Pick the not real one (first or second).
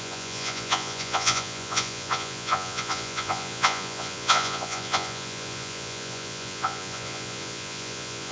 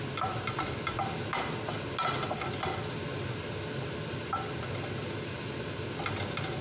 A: first